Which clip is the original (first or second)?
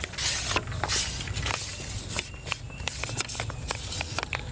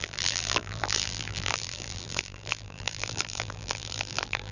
first